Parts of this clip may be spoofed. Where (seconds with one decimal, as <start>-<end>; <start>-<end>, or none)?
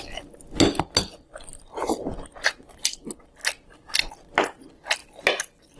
none